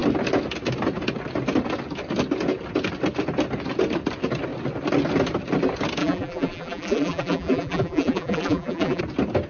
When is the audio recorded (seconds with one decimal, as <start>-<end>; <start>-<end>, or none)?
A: 0.0-6.0; 9.0-9.5